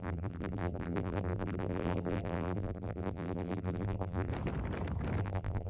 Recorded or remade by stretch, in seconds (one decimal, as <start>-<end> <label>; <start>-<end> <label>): 0.0-4.3 remade; 4.3-5.2 recorded; 5.2-5.7 remade